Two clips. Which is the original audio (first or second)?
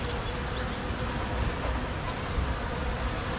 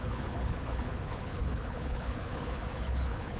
first